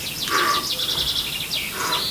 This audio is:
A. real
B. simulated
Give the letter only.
A